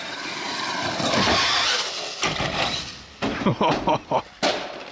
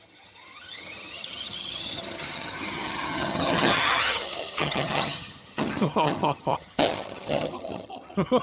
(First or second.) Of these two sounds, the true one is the first